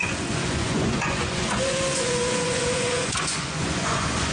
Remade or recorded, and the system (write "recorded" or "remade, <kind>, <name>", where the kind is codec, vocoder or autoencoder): remade, vocoder, Vocos